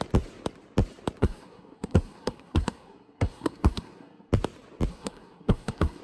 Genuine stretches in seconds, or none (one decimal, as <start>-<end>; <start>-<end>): 0.0-1.2; 4.3-4.9